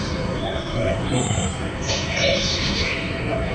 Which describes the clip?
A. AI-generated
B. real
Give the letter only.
A